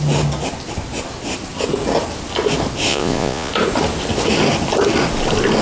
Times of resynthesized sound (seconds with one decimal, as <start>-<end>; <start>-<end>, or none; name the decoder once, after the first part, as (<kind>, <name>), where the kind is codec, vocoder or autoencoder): 2.9-3.5 (vocoder, Vocos)